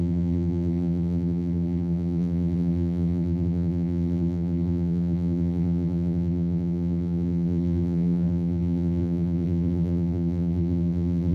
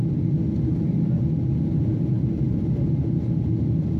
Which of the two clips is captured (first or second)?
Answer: second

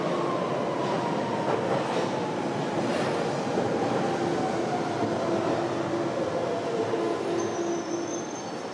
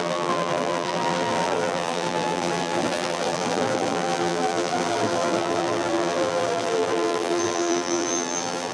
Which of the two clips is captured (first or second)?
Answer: first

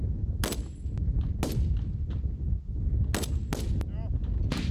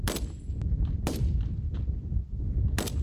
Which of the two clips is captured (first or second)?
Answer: first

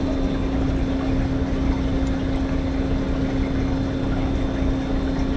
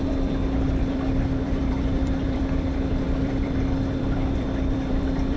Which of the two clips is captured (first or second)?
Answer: first